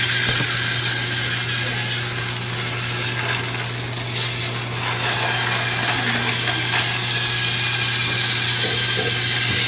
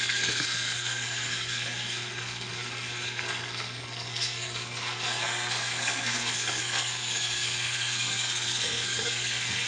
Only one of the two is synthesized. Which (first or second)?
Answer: second